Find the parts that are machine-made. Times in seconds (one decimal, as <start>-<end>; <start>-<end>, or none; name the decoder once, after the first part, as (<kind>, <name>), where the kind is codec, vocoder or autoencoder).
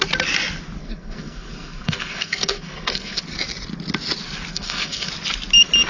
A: 0.8-3.2 (codec, SNAC); 4.5-5.1